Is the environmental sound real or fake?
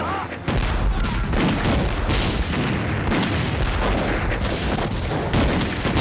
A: real